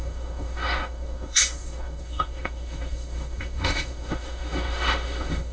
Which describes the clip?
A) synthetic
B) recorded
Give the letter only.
A